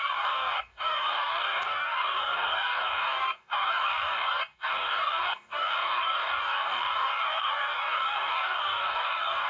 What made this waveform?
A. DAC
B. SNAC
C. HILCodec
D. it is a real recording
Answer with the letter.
A